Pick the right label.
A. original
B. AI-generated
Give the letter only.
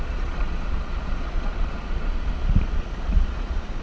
B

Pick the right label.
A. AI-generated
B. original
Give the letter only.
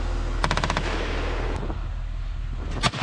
B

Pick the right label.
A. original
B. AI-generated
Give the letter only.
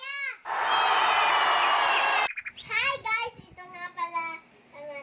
A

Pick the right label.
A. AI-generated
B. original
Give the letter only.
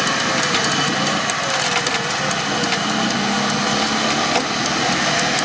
B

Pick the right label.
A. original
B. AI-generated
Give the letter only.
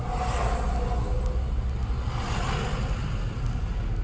A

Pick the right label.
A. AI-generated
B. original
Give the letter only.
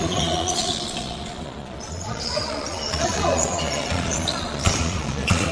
A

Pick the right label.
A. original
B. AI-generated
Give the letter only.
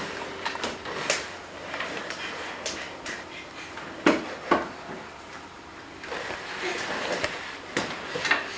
A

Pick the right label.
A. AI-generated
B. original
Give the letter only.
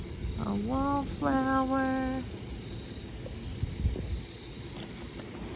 B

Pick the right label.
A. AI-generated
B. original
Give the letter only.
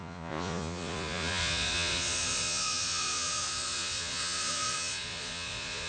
A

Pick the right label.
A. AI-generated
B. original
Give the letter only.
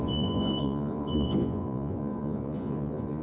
A